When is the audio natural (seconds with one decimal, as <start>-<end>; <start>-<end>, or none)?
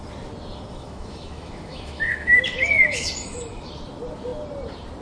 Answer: 0.0-0.7; 3.7-5.0